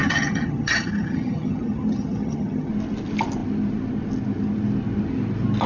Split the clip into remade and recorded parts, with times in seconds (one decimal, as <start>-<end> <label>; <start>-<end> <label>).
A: 0.0-2.7 remade; 2.7-5.7 recorded